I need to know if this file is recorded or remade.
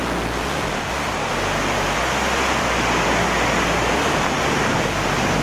recorded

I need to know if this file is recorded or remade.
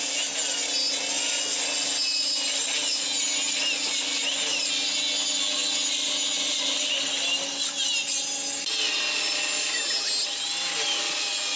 recorded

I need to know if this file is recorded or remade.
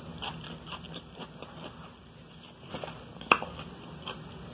recorded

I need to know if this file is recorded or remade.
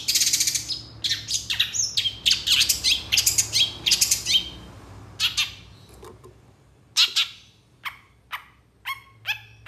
recorded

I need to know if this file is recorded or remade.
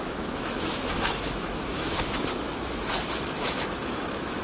remade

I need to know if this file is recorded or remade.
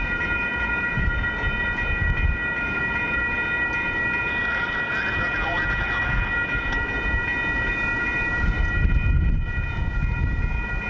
recorded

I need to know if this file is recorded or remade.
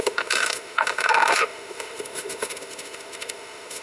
remade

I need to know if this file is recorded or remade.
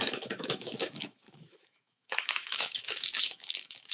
remade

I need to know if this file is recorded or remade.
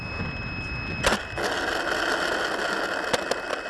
recorded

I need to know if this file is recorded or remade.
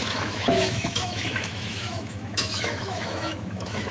remade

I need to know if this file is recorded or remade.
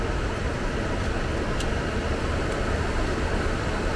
recorded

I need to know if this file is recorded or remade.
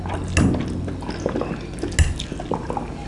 recorded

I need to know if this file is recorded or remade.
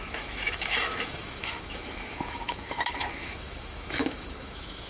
remade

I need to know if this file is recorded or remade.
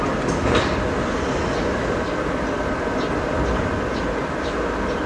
recorded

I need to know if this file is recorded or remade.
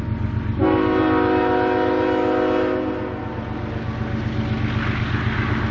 recorded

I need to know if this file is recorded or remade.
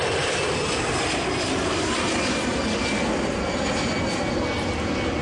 recorded